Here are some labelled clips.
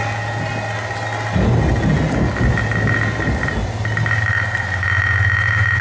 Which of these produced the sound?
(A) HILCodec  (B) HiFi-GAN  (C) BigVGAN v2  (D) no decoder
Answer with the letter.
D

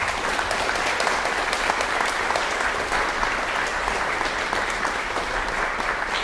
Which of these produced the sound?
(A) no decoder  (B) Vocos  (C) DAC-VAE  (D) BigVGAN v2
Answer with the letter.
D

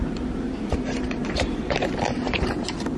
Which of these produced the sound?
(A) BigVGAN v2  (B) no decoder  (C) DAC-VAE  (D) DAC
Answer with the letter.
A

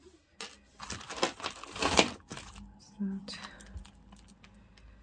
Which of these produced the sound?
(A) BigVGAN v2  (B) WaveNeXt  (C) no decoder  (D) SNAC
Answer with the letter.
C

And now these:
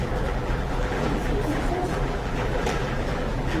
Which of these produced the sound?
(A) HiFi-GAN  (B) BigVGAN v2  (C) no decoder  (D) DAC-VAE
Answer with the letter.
B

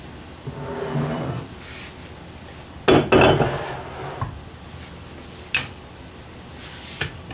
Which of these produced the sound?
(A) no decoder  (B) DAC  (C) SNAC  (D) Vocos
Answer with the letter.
A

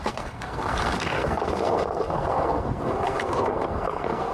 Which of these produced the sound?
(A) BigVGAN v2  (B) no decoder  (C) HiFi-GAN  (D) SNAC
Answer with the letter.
D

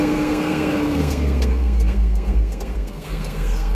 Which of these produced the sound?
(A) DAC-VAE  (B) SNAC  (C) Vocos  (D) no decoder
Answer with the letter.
B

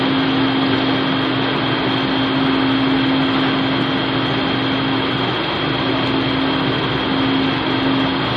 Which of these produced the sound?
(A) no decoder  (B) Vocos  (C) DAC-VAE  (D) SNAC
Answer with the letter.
A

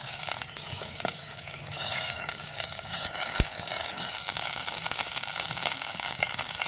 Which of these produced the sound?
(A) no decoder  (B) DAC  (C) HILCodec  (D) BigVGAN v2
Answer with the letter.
B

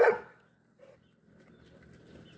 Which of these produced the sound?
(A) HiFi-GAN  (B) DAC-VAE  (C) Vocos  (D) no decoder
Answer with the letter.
D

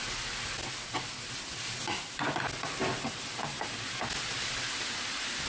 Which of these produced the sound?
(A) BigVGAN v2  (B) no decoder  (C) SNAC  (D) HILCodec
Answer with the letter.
B